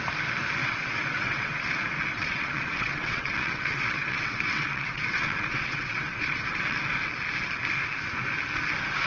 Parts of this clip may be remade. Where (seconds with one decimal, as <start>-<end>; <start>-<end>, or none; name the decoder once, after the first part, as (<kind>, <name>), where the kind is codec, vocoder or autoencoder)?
0.6-1.7 (vocoder, WaveNeXt); 2.1-6.8